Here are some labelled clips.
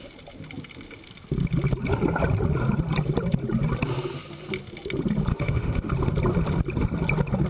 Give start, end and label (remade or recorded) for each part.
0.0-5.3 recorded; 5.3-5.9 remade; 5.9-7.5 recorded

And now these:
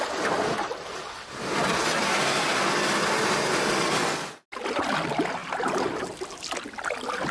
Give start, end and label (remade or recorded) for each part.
0.0-5.4 recorded; 5.4-6.7 remade; 6.7-7.3 recorded

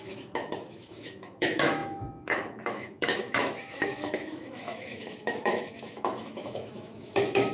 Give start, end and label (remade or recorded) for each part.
0.0-7.5 remade